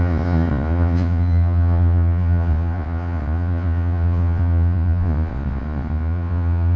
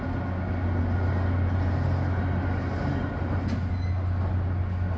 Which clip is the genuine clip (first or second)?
second